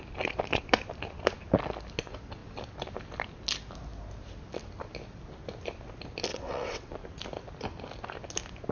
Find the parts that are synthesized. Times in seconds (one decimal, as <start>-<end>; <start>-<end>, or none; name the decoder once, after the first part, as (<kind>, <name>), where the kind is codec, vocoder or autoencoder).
6.3-6.9 (vocoder, WaveNeXt)